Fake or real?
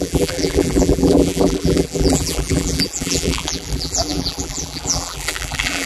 fake